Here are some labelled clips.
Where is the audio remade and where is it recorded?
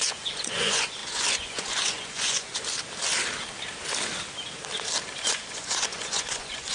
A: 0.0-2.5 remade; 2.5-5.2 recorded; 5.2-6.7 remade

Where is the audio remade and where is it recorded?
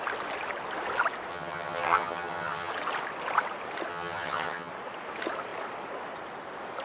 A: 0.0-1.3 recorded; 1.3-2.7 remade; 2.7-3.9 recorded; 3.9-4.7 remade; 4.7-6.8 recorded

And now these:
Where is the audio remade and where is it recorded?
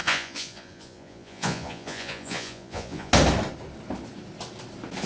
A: 0.0-3.1 remade; 3.1-5.1 recorded